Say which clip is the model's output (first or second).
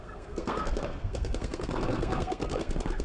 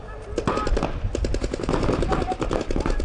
first